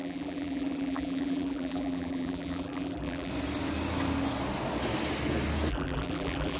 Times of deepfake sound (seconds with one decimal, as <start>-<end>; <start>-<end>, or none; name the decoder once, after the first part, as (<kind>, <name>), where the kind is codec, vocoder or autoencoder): 0.0-3.3 (vocoder, BigVGAN v2); 5.7-6.6